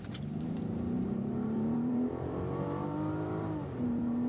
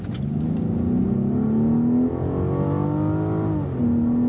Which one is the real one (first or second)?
second